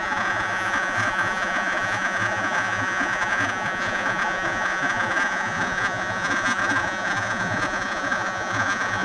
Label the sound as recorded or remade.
remade